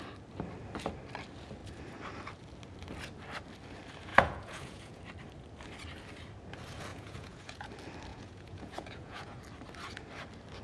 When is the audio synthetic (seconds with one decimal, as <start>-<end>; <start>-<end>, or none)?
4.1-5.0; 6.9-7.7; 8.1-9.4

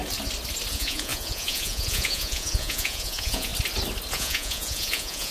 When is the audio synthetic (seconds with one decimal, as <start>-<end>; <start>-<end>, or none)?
0.7-3.5; 4.1-5.3

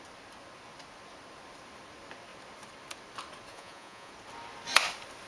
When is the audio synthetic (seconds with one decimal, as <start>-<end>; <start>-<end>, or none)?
3.5-4.1

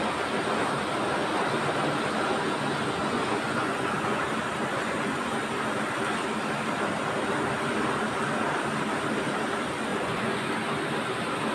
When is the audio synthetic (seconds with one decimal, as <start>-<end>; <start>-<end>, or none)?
3.0-4.2; 4.7-5.3; 9.9-10.5

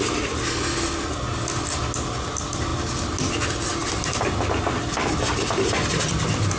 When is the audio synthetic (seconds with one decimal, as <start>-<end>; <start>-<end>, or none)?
none

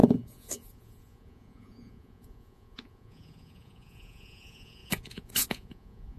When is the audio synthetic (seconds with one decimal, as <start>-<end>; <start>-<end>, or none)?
0.0-6.2

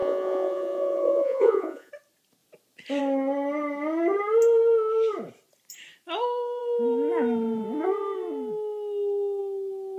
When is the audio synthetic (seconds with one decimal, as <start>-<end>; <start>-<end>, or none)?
0.0-1.9

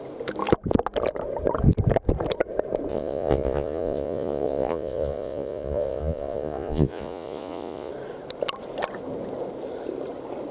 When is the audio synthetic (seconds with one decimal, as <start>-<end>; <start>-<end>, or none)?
2.9-7.9